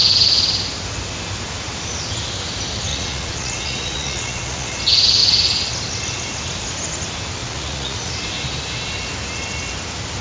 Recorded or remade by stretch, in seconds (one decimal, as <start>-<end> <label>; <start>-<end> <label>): 0.0-2.9 recorded; 2.9-4.8 remade; 4.8-7.4 recorded; 7.4-8.1 remade; 8.1-10.2 recorded